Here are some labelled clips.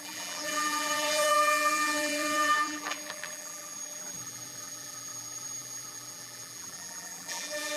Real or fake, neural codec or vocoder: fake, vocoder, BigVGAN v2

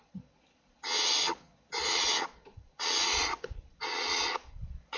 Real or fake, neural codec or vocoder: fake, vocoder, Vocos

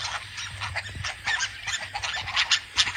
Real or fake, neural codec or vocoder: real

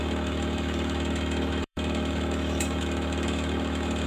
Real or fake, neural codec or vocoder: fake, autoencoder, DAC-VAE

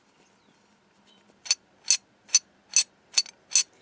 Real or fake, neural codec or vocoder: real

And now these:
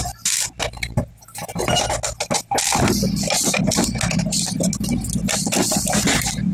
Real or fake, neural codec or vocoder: real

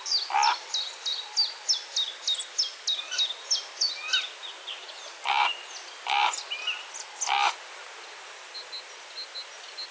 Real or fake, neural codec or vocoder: real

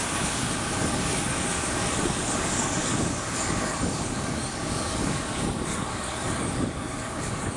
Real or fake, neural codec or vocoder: fake, codec, DAC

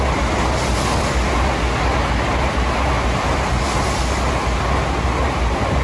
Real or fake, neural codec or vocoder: real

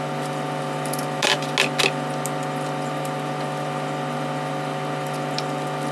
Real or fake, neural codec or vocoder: real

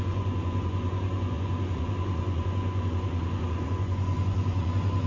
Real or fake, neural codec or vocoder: fake, vocoder, Vocos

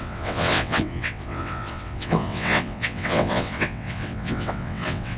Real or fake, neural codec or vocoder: fake, vocoder, WaveNeXt